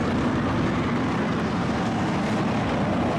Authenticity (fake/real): real